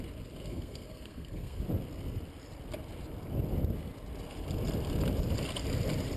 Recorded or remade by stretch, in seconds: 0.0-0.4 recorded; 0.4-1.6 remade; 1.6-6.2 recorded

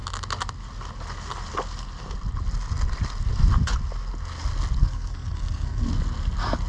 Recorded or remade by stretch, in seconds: 0.0-4.8 recorded; 4.8-5.9 remade; 5.9-6.7 recorded

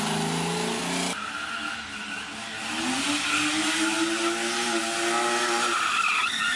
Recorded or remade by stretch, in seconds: 0.0-6.6 recorded